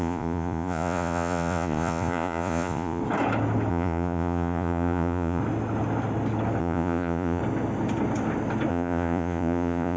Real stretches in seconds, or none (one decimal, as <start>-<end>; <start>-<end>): 3.0-3.7; 5.4-6.6; 7.4-8.7